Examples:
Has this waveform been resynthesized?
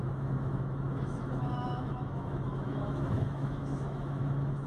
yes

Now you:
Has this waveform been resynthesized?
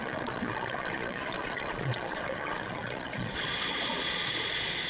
yes